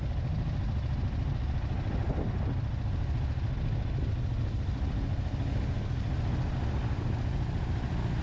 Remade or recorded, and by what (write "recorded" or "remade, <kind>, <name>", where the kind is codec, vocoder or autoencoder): recorded